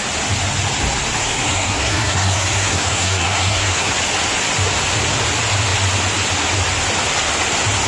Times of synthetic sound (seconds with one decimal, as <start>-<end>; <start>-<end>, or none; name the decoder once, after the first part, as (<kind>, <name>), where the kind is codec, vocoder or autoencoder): 1.2-3.9 (codec, SNAC)

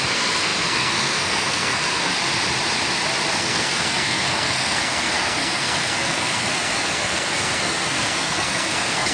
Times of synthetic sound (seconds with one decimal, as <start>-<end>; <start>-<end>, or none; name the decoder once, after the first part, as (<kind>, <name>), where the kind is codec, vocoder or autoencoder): 0.0-2.1 (codec, SNAC); 3.3-9.1